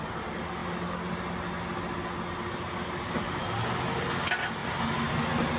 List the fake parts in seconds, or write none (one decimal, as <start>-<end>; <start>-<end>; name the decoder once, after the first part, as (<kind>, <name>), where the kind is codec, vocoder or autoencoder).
none